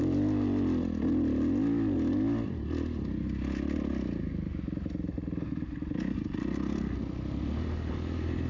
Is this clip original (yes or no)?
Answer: yes